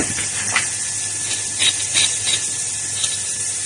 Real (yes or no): yes